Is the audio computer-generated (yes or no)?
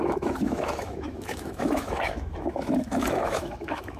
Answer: yes